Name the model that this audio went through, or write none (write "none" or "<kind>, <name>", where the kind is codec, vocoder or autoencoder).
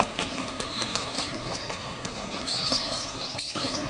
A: codec, SNAC